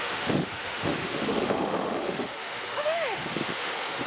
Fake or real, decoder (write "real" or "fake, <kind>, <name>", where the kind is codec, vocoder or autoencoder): fake, autoencoder, DAC-VAE